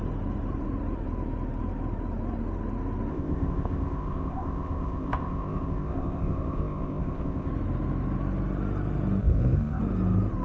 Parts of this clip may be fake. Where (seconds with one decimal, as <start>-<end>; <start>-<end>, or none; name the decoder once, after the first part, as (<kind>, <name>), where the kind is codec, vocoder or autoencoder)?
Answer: 3.1-7.5 (codec, ZipCodec); 9.2-9.8